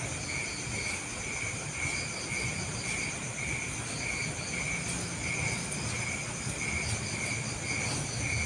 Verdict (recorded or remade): recorded